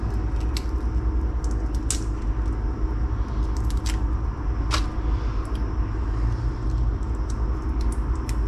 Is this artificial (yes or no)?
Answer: no